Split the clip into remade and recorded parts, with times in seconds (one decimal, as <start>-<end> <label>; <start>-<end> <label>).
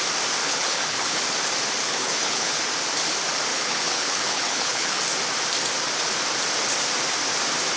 0.0-0.4 recorded; 0.4-1.2 remade; 1.2-1.8 recorded; 1.8-2.6 remade; 2.6-3.5 recorded; 3.5-5.0 remade; 5.0-7.8 recorded